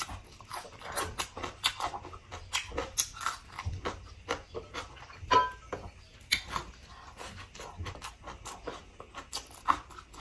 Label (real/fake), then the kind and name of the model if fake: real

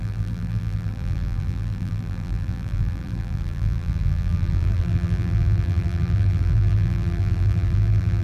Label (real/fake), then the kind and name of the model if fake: fake, vocoder, BigVGAN v2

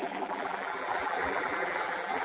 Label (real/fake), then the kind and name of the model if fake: fake, vocoder, BigVGAN v2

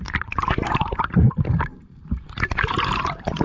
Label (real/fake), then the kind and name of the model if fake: fake, vocoder, BigVGAN v2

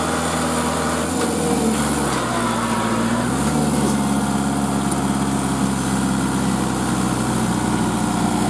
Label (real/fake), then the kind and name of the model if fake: real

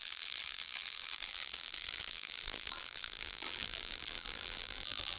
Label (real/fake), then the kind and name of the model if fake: fake, vocoder, BigVGAN v2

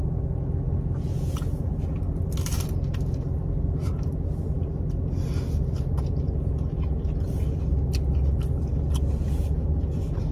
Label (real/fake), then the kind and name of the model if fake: real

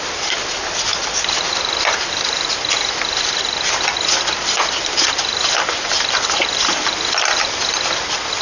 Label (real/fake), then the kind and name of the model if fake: fake, vocoder, BigVGAN v2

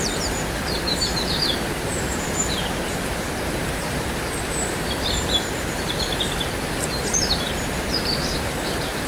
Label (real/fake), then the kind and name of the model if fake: fake, vocoder, BigVGAN v2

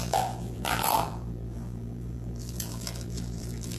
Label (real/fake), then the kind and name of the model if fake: fake, vocoder, BigVGAN v2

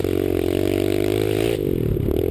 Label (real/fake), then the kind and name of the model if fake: real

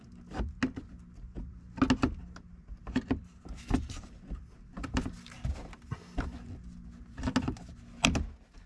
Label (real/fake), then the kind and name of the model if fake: real